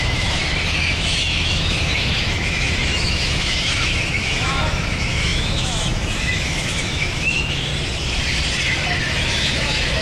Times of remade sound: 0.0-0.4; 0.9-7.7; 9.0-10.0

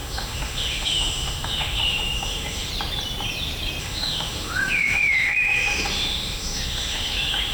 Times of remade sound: 0.0-2.7; 3.8-7.5

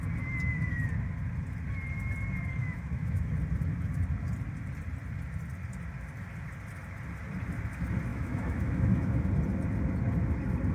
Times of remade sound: 2.6-3.3; 8.1-9.3